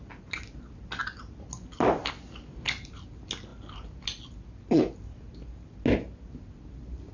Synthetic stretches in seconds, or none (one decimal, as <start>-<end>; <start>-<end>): 1.0-1.5